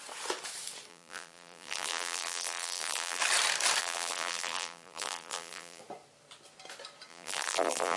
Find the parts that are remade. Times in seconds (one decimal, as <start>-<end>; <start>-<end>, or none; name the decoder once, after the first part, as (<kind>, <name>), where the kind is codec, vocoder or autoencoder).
0.9-3.2 (vocoder, BigVGAN v2); 3.8-5.8; 7.1-8.0